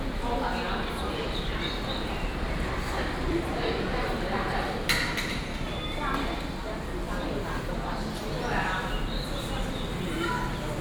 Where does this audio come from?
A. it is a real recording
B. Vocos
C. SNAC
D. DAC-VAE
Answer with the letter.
A